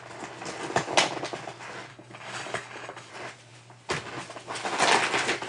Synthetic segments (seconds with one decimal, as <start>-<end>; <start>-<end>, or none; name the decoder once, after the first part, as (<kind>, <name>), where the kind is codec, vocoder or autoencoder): 1.9-3.1 (codec, DAC)